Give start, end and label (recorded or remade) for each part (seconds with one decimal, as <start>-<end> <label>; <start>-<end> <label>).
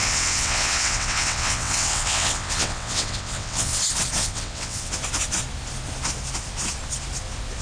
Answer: 0.0-3.8 remade; 3.8-4.2 recorded; 4.2-4.9 remade; 4.9-7.6 recorded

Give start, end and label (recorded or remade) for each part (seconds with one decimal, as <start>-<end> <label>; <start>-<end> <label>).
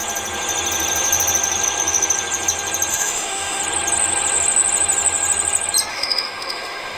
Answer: 0.0-2.9 recorded; 2.9-3.6 remade; 3.6-5.9 recorded; 5.9-7.0 remade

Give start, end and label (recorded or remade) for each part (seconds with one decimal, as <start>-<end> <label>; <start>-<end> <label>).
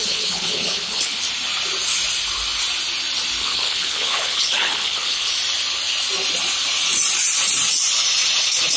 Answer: 0.0-1.2 remade; 1.2-3.4 recorded; 3.4-5.3 remade; 5.3-8.8 recorded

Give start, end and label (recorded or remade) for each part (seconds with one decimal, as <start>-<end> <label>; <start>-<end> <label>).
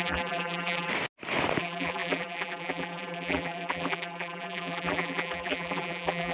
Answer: 0.0-0.9 remade; 0.9-1.6 recorded; 1.6-6.3 remade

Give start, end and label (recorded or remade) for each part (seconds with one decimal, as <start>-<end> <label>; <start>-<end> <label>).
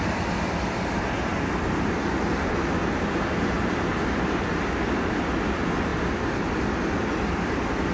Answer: 0.0-7.9 recorded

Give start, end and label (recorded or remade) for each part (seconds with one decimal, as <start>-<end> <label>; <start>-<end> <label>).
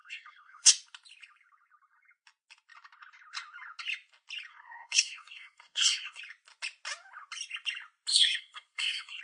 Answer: 0.0-0.7 remade; 0.7-4.5 recorded; 4.5-6.2 remade; 6.2-8.1 recorded; 8.1-9.2 remade